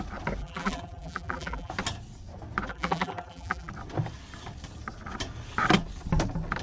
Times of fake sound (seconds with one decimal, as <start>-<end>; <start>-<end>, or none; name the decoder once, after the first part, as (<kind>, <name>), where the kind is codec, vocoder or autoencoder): 0.4-1.7 (vocoder, BigVGAN v2); 2.7-3.7